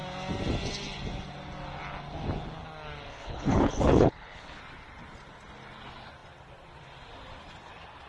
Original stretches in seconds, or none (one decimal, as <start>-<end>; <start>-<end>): 0.0-3.1; 4.6-8.1